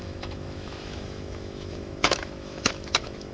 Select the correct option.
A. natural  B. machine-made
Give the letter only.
B